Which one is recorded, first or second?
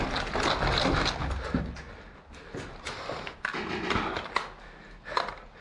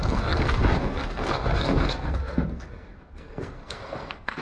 first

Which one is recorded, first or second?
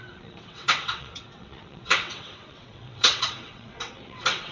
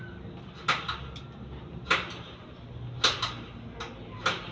second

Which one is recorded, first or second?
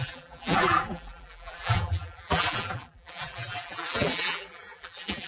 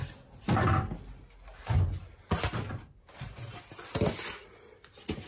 second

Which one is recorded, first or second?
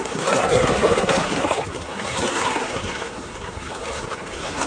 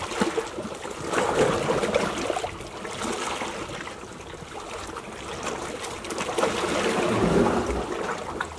second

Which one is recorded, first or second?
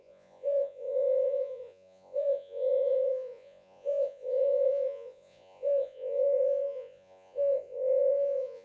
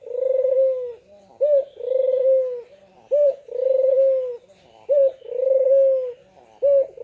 second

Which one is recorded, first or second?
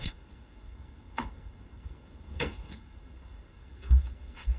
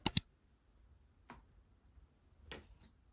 second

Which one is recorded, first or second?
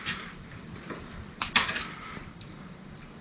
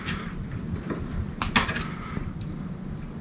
second